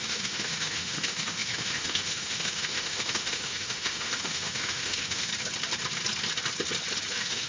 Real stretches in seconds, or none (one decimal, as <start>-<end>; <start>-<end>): 5.3-7.1